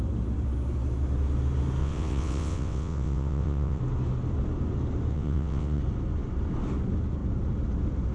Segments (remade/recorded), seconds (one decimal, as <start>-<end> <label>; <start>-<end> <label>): 0.0-1.8 recorded; 1.8-3.8 remade; 3.8-5.1 recorded; 5.1-5.8 remade; 5.8-8.1 recorded